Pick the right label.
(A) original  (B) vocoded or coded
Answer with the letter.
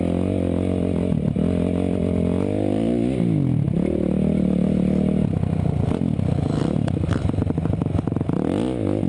A